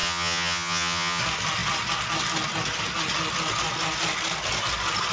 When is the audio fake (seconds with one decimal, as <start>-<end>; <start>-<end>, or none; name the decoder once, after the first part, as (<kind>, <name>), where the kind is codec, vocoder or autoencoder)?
0.0-1.2 (vocoder, HiFi-GAN)